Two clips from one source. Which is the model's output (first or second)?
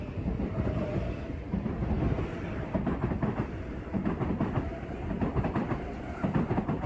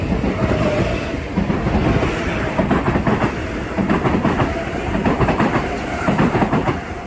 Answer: first